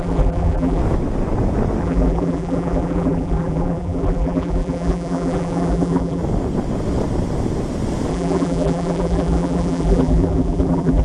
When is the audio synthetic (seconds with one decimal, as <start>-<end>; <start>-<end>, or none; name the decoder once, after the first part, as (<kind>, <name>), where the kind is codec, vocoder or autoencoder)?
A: 0.0-0.8 (vocoder, BigVGAN v2); 1.8-6.2; 8.1-11.0

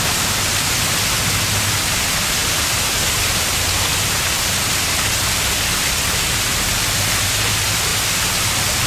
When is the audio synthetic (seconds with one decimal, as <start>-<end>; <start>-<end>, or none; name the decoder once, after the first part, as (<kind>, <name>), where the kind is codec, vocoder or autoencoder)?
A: none

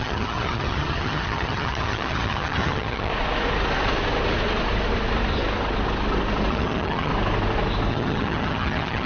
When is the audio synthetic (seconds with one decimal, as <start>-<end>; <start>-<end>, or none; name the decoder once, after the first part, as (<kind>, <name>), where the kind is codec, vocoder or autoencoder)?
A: 0.0-3.1 (vocoder, HiFi-GAN); 6.5-7.1; 7.9-9.1

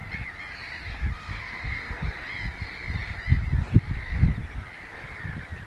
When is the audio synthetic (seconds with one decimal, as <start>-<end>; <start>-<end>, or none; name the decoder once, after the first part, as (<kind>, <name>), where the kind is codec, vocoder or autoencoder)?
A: 1.3-2.0 (codec, SNAC)

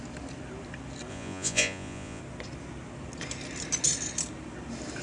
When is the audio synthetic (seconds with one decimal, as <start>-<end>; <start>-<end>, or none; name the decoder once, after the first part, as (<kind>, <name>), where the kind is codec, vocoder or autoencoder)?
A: 1.1-2.2 (vocoder, Vocos)